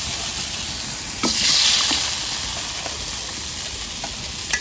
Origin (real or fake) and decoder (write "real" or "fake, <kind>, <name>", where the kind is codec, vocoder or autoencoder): real